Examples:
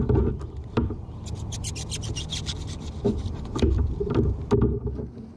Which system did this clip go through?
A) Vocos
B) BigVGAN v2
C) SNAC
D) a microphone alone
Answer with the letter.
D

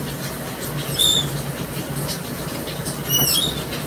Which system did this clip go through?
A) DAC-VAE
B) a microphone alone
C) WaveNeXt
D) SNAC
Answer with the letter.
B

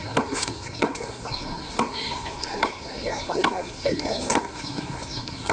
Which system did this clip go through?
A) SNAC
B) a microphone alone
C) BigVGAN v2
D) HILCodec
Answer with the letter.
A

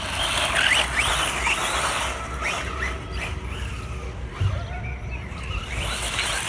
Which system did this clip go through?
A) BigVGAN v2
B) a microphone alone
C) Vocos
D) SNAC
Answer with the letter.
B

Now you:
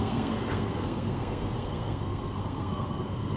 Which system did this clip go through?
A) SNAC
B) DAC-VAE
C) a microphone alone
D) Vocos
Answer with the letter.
A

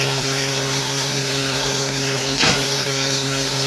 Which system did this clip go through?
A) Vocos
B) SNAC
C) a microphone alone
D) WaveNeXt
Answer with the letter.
B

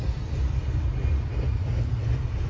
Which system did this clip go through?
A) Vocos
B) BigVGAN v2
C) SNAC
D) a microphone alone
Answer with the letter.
D